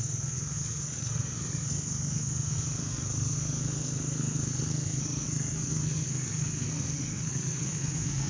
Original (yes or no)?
no